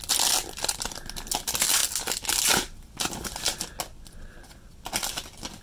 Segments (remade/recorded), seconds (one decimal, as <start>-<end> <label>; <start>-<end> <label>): 0.0-5.6 recorded